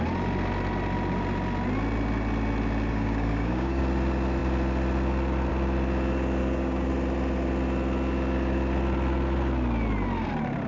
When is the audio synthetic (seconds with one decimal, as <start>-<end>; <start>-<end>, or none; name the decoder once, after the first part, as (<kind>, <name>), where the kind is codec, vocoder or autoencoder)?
2.9-3.8 (codec, DAC); 6.4-6.9